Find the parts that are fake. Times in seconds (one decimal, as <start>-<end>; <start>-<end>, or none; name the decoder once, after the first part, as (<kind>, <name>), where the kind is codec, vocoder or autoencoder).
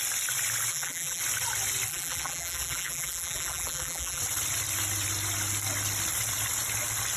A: 0.7-1.2 (vocoder, BigVGAN v2); 1.9-4.2